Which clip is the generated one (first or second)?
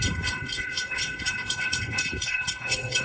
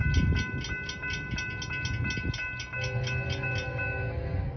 first